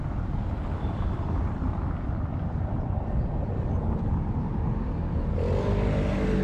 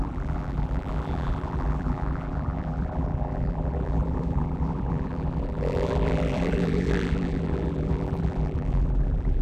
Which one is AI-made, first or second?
second